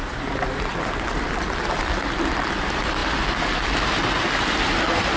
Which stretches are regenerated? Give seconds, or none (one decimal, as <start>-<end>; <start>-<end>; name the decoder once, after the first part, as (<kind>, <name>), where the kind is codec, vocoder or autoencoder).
0.7-2.0 (vocoder, BigVGAN v2)